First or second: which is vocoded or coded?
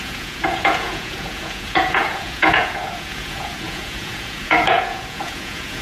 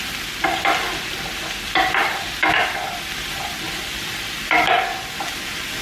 first